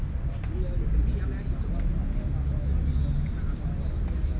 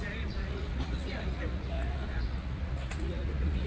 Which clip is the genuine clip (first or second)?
first